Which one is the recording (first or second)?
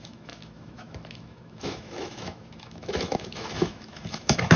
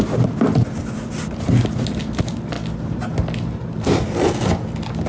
second